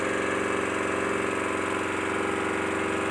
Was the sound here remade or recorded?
recorded